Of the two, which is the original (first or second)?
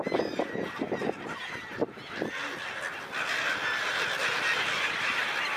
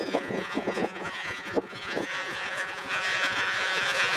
first